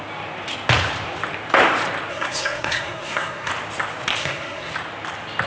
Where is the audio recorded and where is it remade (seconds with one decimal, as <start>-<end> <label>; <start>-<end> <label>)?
0.0-2.1 recorded; 2.1-3.5 remade; 3.5-4.2 recorded; 4.2-4.7 remade; 4.7-5.5 recorded